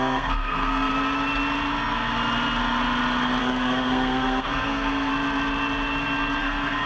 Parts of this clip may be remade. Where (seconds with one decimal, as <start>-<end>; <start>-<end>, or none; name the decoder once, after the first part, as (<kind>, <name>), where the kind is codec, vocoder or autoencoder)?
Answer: 0.0-0.9 (codec, SNAC); 3.4-5.1; 6.4-6.9